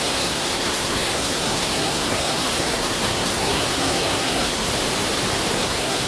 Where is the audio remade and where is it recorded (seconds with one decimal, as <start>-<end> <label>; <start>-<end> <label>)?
0.0-4.7 remade; 4.7-5.5 recorded; 5.5-6.1 remade